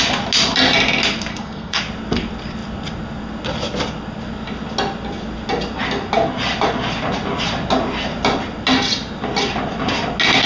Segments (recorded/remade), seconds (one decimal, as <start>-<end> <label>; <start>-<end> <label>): 0.0-1.3 recorded; 1.3-1.8 remade; 1.8-10.5 recorded